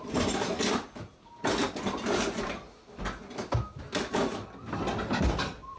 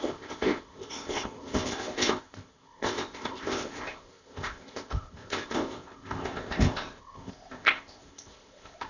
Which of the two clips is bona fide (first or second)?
first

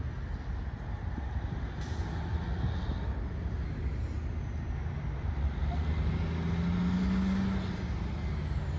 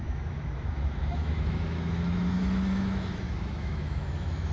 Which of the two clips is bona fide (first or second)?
first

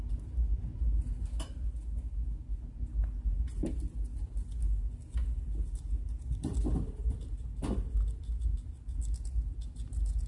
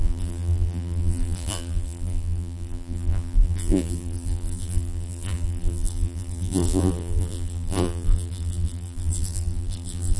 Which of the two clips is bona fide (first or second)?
first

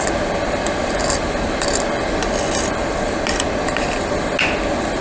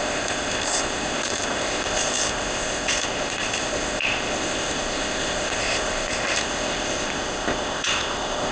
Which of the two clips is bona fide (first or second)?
first